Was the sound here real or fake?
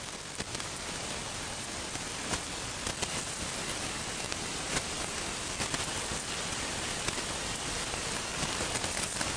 real